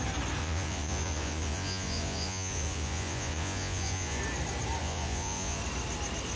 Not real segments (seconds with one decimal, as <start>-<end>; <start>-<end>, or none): 0.4-4.2; 4.8-5.6